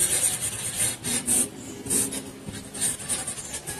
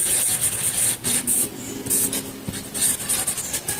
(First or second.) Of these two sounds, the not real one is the first